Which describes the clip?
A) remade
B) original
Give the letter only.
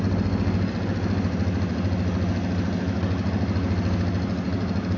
B